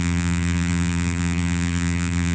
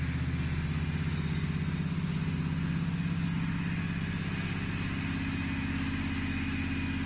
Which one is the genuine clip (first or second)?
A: second